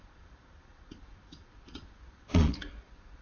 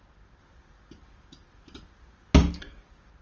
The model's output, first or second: first